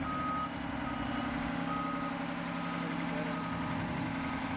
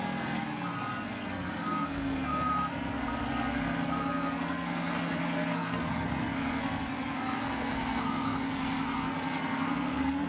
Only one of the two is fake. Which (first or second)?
second